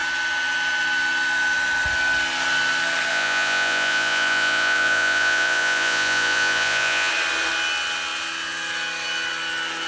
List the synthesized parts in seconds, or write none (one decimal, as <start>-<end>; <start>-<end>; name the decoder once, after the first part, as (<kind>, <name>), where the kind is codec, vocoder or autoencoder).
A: 3.1-7.1 (vocoder, Vocos)